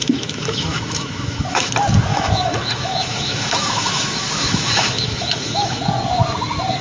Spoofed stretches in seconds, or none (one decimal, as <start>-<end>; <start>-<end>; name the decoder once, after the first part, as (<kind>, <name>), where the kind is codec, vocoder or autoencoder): 0.0-1.7 (autoencoder, DAC-VAE); 2.1-5.8